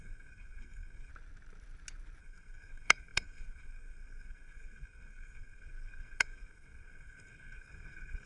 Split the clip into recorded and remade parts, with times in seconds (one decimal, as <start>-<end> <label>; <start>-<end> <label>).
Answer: 0.0-1.1 remade; 1.1-2.2 recorded; 2.2-8.3 remade